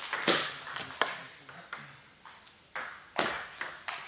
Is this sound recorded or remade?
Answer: recorded